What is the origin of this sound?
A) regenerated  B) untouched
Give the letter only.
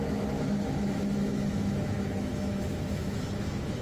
A